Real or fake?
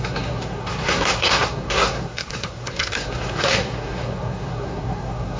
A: fake